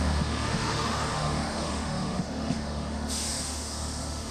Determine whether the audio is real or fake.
fake